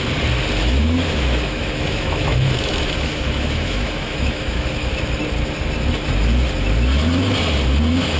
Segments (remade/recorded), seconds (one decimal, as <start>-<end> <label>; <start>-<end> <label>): 0.0-0.6 recorded; 0.6-4.9 remade; 4.9-8.2 recorded